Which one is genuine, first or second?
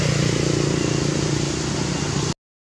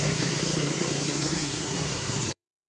first